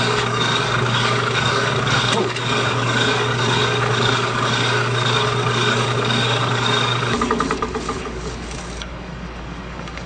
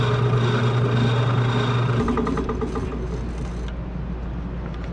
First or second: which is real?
second